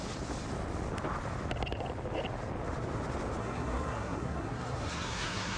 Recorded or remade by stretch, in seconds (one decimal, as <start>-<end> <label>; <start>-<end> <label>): 0.0-3.4 recorded; 3.4-5.6 remade